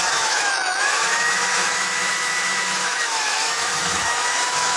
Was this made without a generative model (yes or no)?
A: no